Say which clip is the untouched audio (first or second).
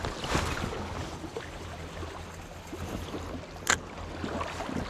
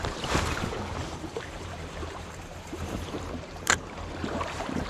first